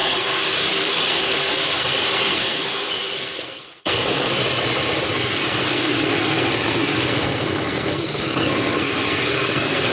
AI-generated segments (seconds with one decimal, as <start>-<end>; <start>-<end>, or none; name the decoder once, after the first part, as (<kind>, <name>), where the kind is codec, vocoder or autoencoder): 0.0-4.4 (codec, SNAC); 5.0-9.9

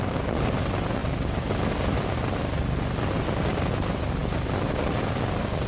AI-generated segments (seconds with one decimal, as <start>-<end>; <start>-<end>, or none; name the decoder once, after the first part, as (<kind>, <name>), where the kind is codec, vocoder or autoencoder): none

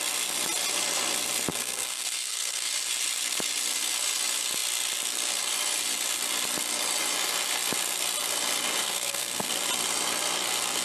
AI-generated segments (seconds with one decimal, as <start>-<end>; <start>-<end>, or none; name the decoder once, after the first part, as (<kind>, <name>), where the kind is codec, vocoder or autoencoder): 1.5-2.7 (codec, SNAC); 8.8-9.5

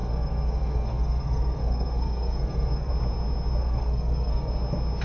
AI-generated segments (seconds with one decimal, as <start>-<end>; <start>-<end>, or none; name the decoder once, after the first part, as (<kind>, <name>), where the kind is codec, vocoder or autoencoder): 0.0-2.9 (codec, SNAC); 3.6-4.5

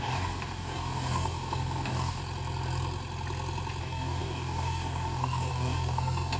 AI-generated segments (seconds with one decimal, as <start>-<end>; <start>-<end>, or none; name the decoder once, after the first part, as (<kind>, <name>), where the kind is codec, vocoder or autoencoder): 0.0-2.2 (codec, DAC); 3.8-6.4

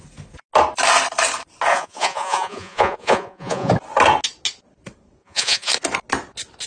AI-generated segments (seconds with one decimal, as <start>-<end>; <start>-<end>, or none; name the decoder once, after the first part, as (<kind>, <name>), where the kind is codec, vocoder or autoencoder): 1.7-3.7 (vocoder, Vocos); 5.2-5.7

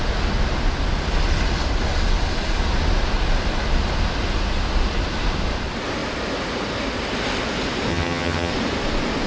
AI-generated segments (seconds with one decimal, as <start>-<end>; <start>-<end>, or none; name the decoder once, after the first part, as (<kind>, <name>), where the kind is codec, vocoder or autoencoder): 7.9-8.5 (vocoder, HiFi-GAN)